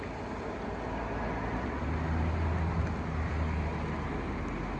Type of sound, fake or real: real